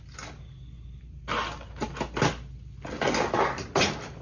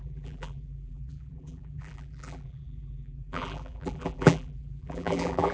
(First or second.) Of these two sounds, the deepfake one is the second